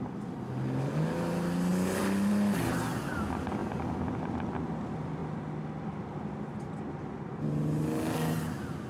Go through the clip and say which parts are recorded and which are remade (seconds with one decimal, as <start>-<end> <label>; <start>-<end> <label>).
0.0-8.9 recorded